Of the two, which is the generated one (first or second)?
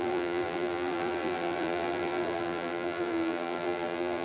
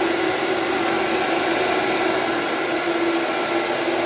first